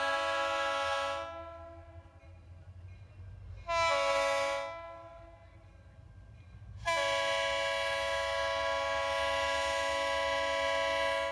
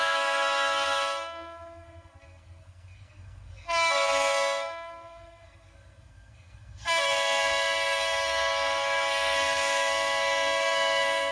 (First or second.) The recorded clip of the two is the first